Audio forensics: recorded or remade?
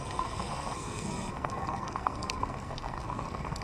remade